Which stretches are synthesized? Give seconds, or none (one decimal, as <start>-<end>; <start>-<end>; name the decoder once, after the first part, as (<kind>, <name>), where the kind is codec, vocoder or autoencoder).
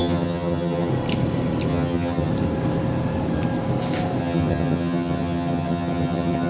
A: 0.0-0.9 (vocoder, HiFi-GAN); 1.7-2.3; 4.2-6.5